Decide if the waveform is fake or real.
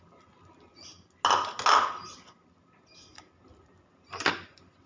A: real